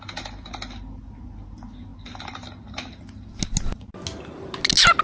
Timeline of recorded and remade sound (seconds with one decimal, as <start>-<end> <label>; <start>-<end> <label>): 0.0-5.0 recorded